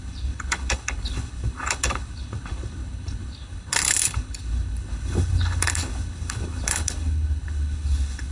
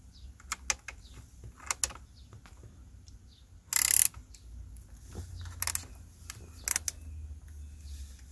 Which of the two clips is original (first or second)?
second